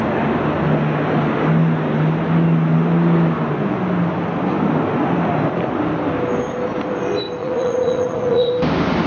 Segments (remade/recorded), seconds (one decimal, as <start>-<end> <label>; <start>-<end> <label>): 0.0-7.4 recorded; 7.4-8.5 remade; 8.5-9.1 recorded